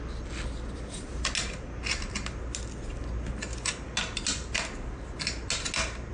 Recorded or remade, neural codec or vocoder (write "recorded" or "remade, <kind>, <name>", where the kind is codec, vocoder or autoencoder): recorded